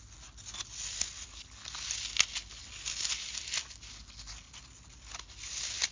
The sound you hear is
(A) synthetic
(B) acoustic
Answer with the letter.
B